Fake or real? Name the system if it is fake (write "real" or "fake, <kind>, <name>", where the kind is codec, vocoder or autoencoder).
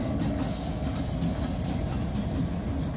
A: real